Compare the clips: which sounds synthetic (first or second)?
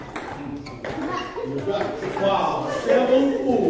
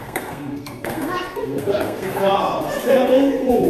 second